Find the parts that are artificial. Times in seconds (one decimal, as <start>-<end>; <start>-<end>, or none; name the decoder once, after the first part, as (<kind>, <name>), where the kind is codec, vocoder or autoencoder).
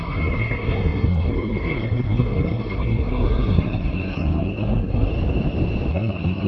0.0-5.1 (codec, SNAC); 5.9-6.5